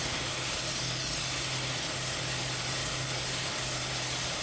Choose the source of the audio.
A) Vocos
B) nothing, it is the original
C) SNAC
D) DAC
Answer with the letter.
B